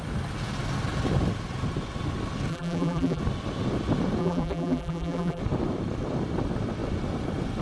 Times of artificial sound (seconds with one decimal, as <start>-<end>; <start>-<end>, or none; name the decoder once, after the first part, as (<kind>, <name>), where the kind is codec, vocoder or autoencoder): 2.5-3.2 (vocoder, BigVGAN v2); 4.2-5.4